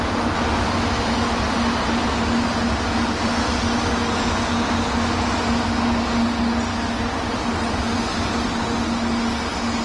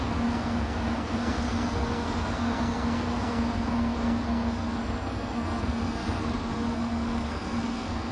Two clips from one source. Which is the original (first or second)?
first